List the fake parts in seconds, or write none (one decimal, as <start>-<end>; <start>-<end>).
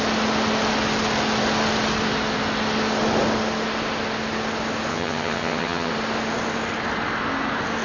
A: 4.9-5.9